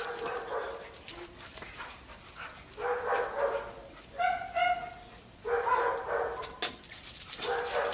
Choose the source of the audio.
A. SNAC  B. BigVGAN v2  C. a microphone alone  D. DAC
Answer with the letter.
C